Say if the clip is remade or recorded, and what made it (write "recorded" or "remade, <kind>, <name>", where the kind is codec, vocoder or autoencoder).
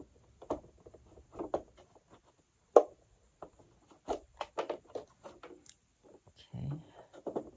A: recorded